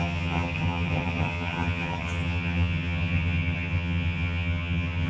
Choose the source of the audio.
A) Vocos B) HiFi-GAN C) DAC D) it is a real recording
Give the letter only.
B